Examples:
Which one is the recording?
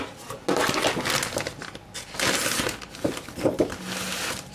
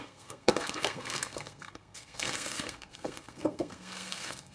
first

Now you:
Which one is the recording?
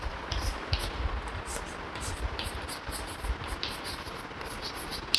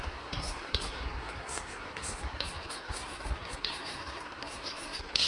first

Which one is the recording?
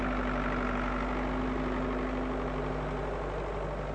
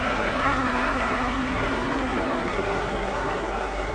first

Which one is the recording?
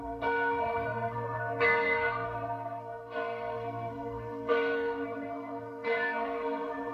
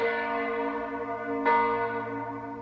second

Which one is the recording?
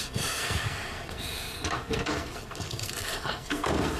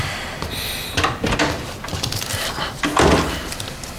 second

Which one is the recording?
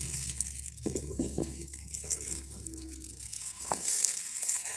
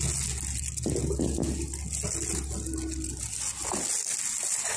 second